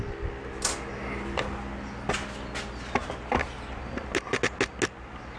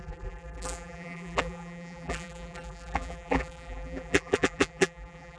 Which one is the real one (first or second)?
first